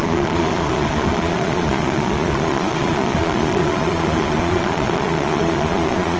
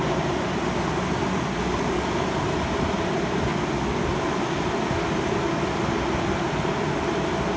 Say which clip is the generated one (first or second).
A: first